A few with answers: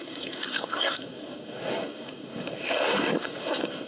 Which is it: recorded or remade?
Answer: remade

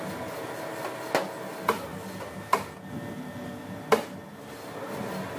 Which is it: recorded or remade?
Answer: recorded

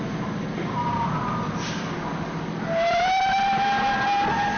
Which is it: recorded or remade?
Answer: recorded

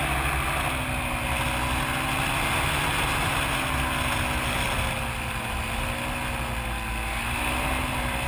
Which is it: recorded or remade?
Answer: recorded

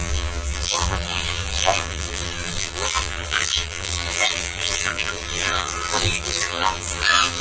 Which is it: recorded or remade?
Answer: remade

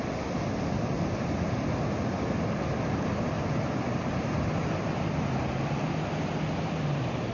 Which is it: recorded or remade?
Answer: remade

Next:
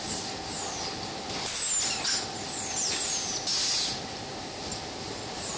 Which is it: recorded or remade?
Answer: recorded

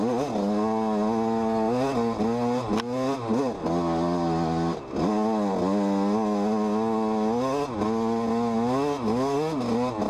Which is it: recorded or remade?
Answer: recorded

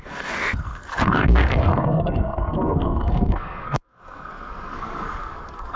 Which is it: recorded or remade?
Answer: remade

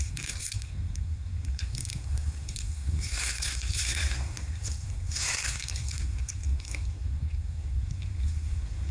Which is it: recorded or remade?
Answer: remade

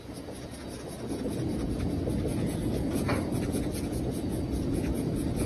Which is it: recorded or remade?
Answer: remade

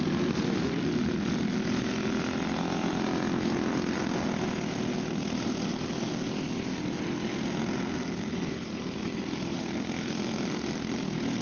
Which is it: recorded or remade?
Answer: recorded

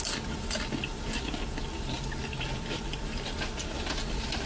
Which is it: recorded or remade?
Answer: recorded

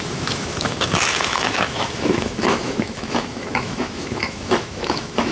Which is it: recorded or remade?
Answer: remade